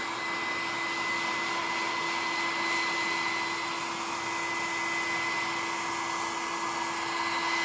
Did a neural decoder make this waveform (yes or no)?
no